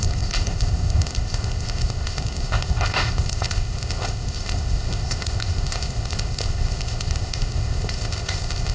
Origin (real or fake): fake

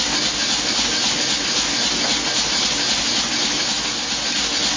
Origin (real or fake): real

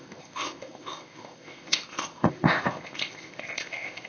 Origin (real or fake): fake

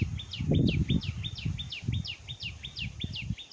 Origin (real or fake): real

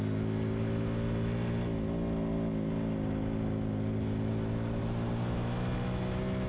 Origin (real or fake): real